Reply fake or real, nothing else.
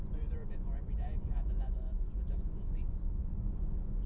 fake